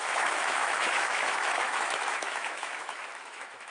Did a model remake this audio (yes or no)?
yes